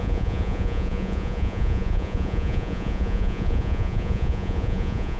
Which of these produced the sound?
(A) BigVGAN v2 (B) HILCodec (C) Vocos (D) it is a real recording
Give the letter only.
C